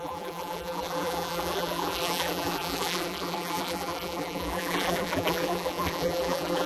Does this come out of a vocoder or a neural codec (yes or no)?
yes